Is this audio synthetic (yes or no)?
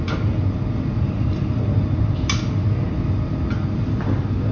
no